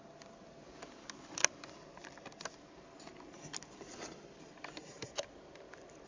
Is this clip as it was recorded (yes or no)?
yes